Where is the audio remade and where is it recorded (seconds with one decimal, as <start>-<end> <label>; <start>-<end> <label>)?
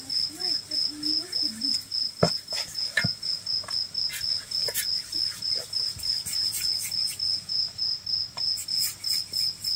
0.0-7.3 recorded; 7.3-7.9 remade; 7.9-9.8 recorded